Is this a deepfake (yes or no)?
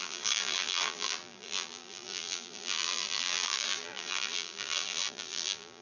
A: yes